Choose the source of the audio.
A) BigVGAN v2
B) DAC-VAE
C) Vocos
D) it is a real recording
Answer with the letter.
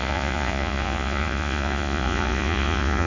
C